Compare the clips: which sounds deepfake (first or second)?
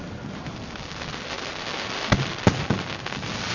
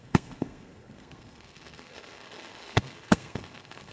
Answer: second